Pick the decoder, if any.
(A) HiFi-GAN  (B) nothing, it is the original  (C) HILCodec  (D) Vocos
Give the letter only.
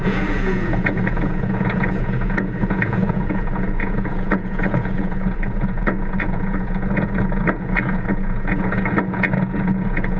D